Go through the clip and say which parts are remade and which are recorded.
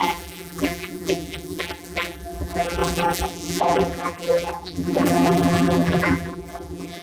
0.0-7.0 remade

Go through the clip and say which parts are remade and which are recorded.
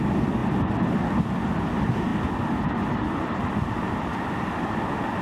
0.0-5.2 recorded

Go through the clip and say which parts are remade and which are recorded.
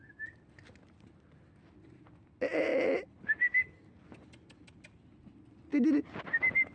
0.0-2.7 recorded; 2.7-4.7 remade; 4.7-6.7 recorded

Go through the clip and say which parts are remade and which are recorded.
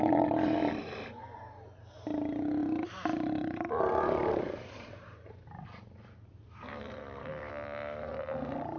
0.0-2.6 recorded; 2.6-7.5 remade; 7.5-8.8 recorded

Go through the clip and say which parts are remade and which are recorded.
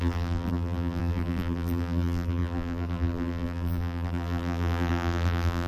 0.0-5.7 remade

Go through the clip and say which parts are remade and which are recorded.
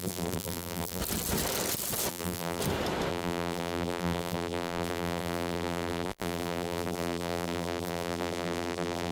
0.0-1.0 remade; 1.0-2.1 recorded; 2.1-2.6 remade; 2.6-3.1 recorded; 3.1-9.1 remade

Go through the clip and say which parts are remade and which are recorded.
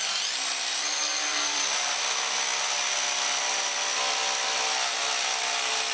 0.0-5.9 recorded